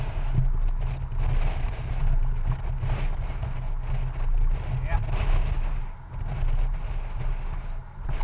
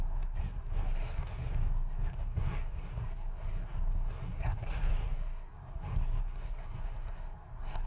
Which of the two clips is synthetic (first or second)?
second